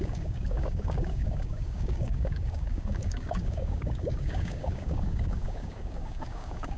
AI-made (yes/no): yes